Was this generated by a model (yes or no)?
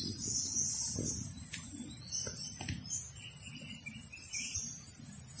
no